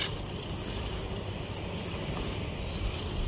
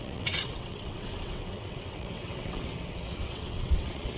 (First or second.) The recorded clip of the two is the first